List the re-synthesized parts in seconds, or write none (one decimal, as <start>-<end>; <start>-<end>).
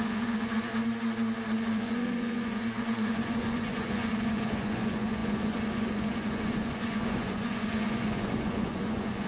0.0-0.7; 1.6-9.3